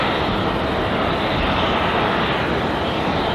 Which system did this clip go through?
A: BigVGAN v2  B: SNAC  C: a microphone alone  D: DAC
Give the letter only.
C